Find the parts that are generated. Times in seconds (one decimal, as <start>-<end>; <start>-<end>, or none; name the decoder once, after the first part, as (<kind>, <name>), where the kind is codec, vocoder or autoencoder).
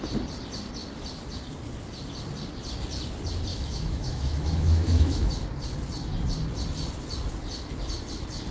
3.5-5.3 (autoencoder, DAC-VAE)